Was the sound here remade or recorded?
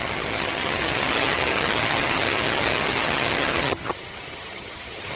remade